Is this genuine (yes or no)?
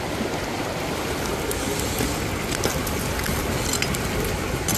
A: yes